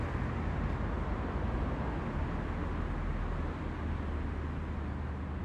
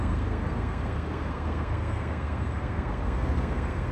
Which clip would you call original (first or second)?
first